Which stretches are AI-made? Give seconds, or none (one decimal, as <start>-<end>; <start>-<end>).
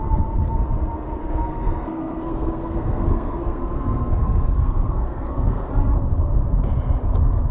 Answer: 1.2-5.7